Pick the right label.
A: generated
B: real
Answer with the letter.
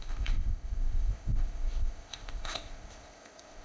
A